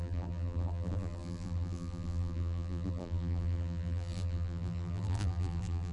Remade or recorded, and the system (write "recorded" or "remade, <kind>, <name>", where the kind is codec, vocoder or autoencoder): remade, vocoder, BigVGAN v2